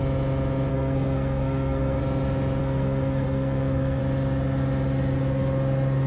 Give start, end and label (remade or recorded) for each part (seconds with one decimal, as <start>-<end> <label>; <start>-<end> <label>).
0.0-0.7 recorded; 0.7-2.0 remade; 2.0-2.6 recorded; 2.6-4.0 remade; 4.0-6.1 recorded